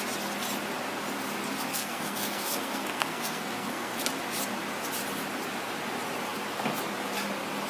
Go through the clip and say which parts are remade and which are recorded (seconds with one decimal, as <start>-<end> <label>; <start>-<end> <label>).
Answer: 0.0-1.7 recorded; 1.7-4.0 remade; 4.0-7.7 recorded